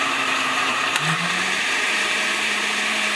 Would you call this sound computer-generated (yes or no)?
yes